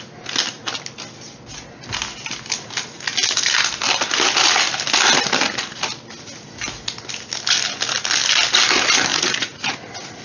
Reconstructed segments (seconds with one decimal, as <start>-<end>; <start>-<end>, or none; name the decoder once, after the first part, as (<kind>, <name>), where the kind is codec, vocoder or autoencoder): 9.1-10.2 (vocoder, Vocos)